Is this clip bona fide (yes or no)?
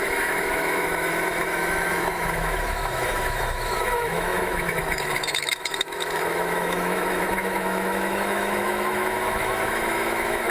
no